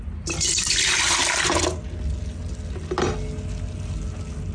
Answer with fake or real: real